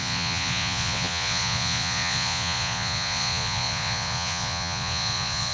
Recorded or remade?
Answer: remade